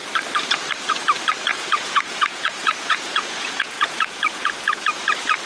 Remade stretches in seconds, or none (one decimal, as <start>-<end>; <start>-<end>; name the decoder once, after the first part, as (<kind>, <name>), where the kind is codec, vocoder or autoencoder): 1.5-4.8 (vocoder, Vocos)